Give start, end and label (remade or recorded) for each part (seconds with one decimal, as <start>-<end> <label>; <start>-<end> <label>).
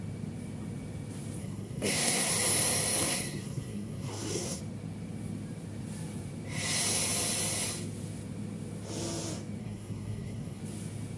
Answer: 0.0-1.4 recorded; 1.4-2.3 remade; 2.3-3.0 recorded; 3.0-4.6 remade; 4.6-9.6 recorded; 9.6-10.6 remade; 10.6-11.2 recorded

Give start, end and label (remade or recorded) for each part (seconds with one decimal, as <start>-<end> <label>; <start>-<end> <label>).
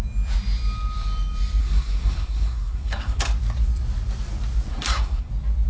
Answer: 0.0-1.6 recorded; 1.6-3.2 remade; 3.2-4.7 recorded; 4.7-5.3 remade; 5.3-5.7 recorded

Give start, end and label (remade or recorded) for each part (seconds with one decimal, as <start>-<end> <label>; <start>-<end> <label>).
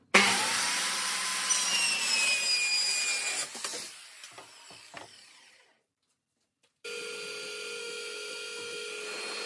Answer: 0.0-7.8 recorded; 7.8-8.9 remade; 8.9-9.5 recorded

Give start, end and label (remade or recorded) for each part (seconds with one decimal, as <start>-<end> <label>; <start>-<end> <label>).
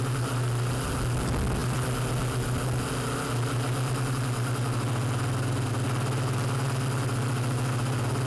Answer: 0.0-8.3 recorded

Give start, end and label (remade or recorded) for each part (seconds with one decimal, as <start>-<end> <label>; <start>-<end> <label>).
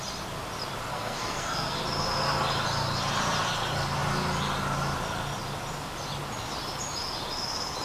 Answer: 0.0-0.9 recorded; 0.9-1.8 remade; 1.8-7.8 recorded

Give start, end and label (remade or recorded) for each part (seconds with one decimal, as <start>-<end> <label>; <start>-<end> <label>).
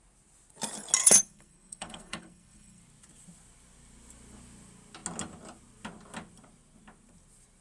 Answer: 0.0-1.0 recorded; 1.0-2.8 remade; 2.8-7.6 recorded